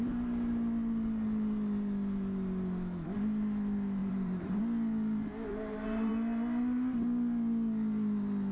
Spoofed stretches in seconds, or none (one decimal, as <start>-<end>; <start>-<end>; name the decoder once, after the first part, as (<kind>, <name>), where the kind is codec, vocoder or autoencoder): 4.0-4.6 (vocoder, BigVGAN v2); 5.5-6.1